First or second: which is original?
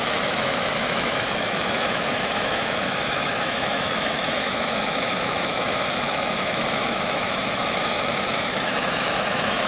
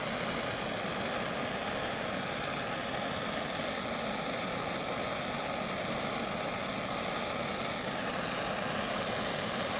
second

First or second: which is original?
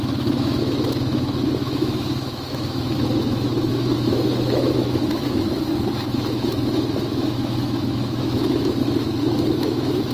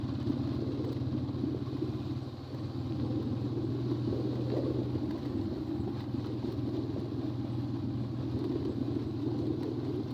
second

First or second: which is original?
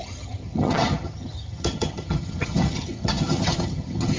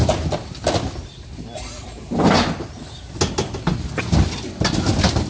second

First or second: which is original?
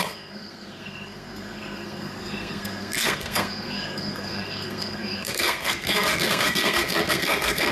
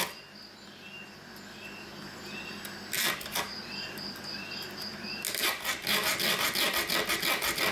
second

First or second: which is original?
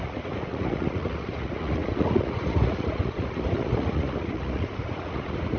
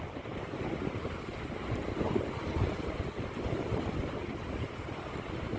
second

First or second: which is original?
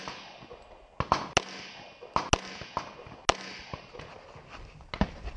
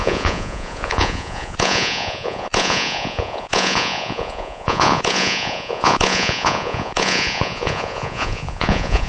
first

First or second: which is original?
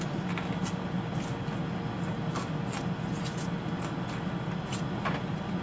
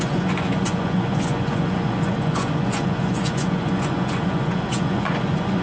first